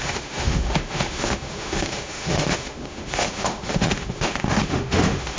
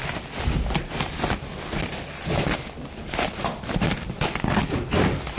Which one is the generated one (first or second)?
first